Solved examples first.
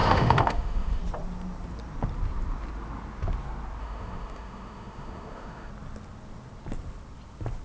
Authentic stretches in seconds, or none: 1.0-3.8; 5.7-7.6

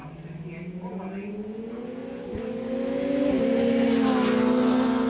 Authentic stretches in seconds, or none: 0.0-0.6; 2.0-5.1

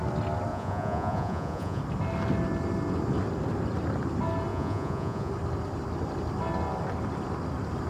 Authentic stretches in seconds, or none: 0.0-0.5; 1.8-4.5; 5.3-7.9

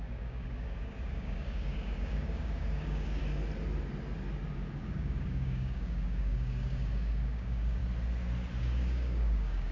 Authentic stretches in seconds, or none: 3.2-4.8; 7.8-8.6

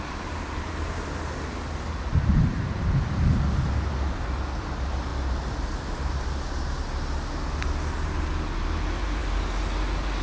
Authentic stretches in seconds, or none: 0.0-10.2

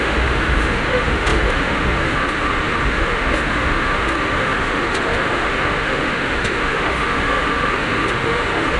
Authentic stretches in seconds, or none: none

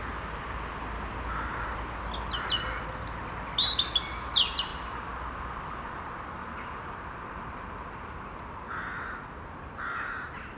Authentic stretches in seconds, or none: 0.0-10.6

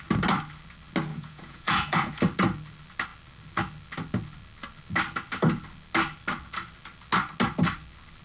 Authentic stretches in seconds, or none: 0.0-1.1; 2.2-8.2